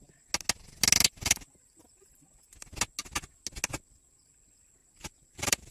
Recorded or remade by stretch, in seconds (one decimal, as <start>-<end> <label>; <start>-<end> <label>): 0.0-1.2 recorded; 1.2-2.1 remade; 2.1-4.8 recorded; 4.8-5.7 remade